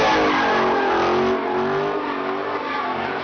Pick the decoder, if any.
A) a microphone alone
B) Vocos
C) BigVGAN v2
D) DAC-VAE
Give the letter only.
A